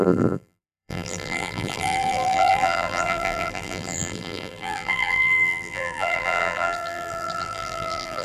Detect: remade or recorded remade